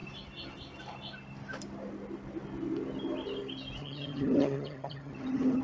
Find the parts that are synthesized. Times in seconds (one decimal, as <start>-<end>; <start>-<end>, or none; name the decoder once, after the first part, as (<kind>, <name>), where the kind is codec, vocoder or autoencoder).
3.8-5.6 (vocoder, HiFi-GAN)